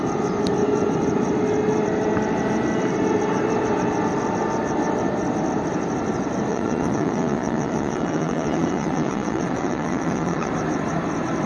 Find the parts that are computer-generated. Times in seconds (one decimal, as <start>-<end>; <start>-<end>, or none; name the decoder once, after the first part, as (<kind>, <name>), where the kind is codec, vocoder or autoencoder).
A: 6.5-10.5 (vocoder, Vocos)

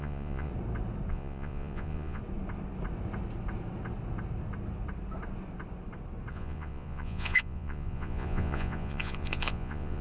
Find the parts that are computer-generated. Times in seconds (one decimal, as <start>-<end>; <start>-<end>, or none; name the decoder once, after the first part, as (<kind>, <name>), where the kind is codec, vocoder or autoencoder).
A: 0.0-0.5 (vocoder, Vocos); 1.1-2.2; 6.3-10.0

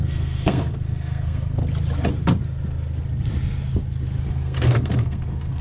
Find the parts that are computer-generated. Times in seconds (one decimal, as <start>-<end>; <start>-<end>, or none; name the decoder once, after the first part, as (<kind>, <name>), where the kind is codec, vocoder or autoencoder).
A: 0.0-1.6 (codec, SNAC); 4.3-5.6

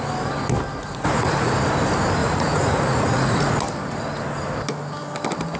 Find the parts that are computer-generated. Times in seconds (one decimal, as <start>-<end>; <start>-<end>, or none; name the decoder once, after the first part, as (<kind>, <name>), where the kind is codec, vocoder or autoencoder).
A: 0.8-1.7 (vocoder, Vocos); 2.2-3.5

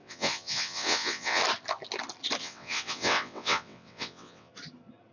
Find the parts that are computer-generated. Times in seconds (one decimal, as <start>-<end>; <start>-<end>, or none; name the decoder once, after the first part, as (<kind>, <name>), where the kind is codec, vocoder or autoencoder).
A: 0.0-1.4 (vocoder, WaveNeXt); 2.4-4.5

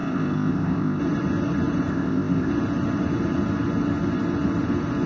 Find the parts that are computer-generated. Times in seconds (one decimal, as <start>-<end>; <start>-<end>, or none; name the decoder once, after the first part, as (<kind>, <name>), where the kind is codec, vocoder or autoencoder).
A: 0.0-1.0 (codec, ZipCodec); 1.9-2.5

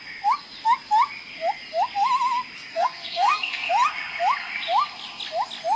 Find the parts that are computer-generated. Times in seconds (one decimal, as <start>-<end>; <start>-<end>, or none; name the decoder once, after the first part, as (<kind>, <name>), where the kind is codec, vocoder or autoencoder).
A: 2.7-3.7 (codec, SNAC)

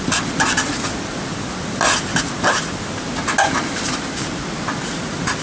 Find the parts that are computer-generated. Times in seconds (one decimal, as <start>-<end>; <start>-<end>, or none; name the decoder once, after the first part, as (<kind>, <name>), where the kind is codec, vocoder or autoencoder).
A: none